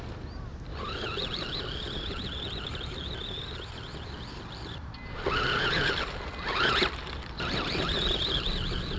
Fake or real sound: real